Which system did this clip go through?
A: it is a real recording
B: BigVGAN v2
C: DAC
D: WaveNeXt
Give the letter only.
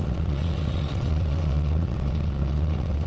D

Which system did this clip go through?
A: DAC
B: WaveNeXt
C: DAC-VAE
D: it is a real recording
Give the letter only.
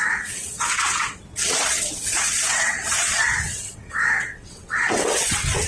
B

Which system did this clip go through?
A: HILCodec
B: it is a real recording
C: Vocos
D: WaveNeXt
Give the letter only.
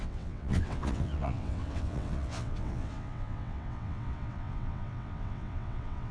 D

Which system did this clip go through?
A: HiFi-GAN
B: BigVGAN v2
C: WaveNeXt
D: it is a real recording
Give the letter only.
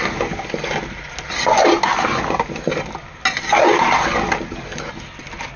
D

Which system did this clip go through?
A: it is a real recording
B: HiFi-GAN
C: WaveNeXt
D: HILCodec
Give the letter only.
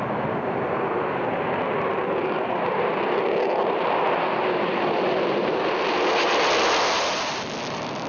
A